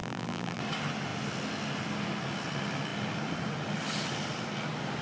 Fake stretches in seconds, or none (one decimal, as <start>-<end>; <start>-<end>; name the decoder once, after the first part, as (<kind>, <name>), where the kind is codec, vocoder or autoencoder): 0.0-0.6 (vocoder, BigVGAN v2)